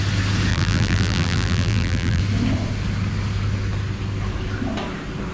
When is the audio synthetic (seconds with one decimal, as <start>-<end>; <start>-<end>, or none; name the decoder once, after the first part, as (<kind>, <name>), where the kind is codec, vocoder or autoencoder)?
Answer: 0.5-2.2 (vocoder, BigVGAN v2)